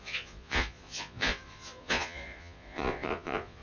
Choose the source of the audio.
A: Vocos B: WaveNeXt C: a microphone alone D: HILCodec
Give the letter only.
A